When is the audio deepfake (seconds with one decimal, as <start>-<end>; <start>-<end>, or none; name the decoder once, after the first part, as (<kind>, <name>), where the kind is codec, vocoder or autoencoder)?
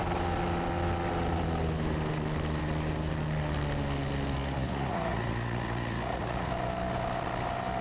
4.4-6.5 (vocoder, Vocos)